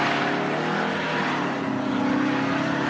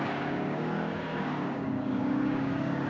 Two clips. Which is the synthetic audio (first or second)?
second